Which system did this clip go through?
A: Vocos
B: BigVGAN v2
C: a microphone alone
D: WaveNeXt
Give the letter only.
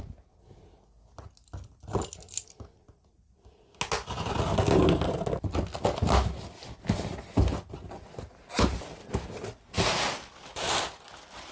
C